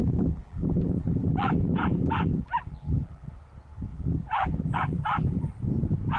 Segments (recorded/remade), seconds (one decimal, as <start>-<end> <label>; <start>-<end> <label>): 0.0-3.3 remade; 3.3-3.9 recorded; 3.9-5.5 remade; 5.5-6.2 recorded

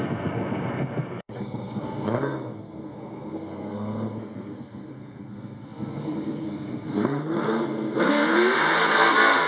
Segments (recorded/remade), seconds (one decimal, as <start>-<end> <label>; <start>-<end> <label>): 0.0-9.5 remade

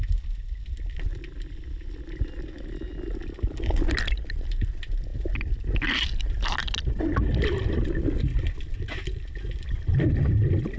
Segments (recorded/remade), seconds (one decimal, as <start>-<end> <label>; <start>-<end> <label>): 0.0-10.8 recorded

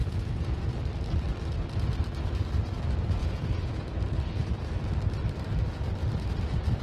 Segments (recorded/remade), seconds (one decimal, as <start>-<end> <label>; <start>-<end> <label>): 0.0-0.7 remade; 0.7-3.2 recorded; 3.2-4.0 remade; 4.0-6.8 recorded

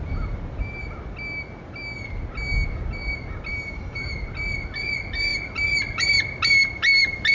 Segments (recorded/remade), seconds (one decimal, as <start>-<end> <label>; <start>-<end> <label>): 0.0-3.5 recorded; 3.5-4.0 remade; 4.0-7.3 recorded

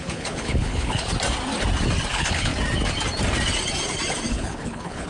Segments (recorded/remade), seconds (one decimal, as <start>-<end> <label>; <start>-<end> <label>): 0.0-1.1 remade; 1.1-2.1 recorded; 2.1-2.5 remade; 2.5-4.3 recorded; 4.3-5.1 remade

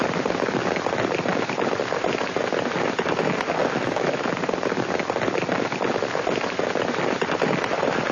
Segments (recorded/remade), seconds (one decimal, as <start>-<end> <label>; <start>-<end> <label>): 0.0-3.6 recorded; 3.6-4.3 remade; 4.3-8.1 recorded

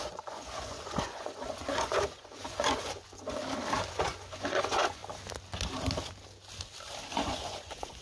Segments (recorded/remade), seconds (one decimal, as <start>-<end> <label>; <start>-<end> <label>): 0.0-3.4 remade; 3.4-3.9 recorded; 3.9-5.0 remade; 5.0-7.1 recorded; 7.1-8.0 remade